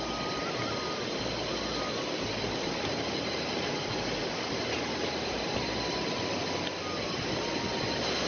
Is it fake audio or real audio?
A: real